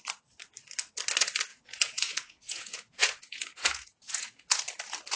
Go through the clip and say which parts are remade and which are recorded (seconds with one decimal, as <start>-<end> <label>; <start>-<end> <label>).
0.0-1.5 recorded; 1.5-4.6 remade; 4.6-5.2 recorded